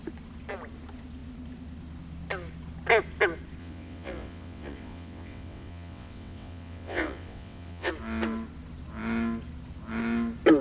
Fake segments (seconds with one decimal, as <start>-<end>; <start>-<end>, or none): 3.6-7.9